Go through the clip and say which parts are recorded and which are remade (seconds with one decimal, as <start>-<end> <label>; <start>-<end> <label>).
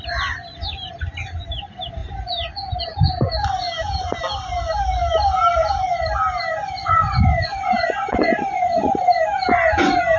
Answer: 0.0-6.6 recorded; 6.6-9.2 remade; 9.2-10.2 recorded